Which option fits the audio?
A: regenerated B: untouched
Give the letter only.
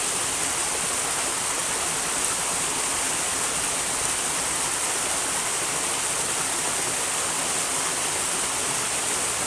B